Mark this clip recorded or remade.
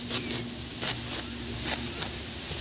recorded